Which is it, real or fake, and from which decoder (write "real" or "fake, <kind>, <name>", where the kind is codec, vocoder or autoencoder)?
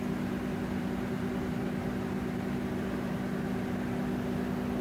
fake, vocoder, BigVGAN v2